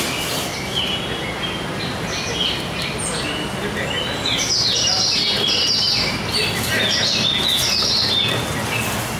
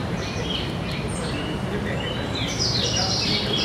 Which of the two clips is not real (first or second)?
second